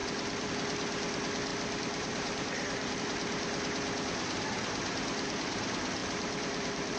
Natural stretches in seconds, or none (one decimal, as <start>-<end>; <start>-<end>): 0.5-1.5; 3.0-6.0